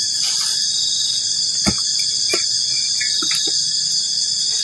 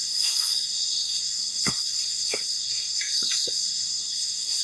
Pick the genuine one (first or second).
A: first